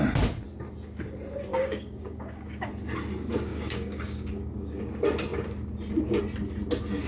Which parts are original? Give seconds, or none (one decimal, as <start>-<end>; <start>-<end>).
0.0-1.5; 2.7-3.5; 4.8-7.1